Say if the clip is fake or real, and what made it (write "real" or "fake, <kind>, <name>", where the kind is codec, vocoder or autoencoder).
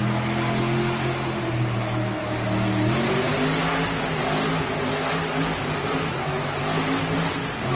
real